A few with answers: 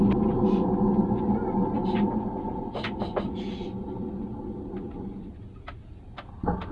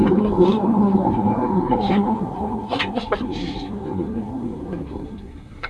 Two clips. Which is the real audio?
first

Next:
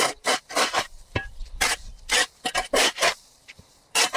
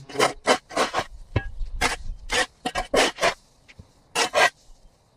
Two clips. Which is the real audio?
second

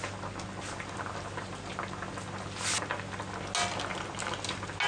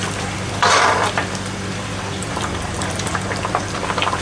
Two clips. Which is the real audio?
first